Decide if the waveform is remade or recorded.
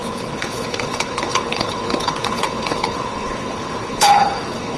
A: remade